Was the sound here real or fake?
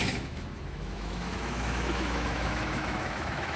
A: fake